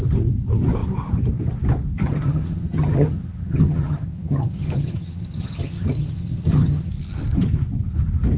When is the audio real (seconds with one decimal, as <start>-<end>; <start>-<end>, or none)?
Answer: 0.0-2.0; 6.9-8.4